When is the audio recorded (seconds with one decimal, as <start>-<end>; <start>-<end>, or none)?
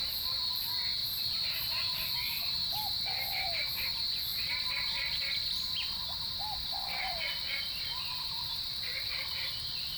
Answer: 0.0-1.0; 2.4-4.3; 8.9-10.0